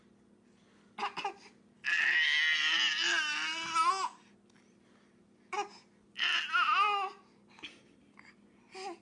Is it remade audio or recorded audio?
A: recorded